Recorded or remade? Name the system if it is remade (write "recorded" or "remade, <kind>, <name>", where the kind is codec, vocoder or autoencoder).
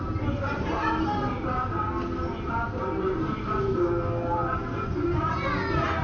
recorded